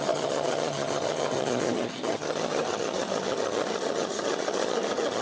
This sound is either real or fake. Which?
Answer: fake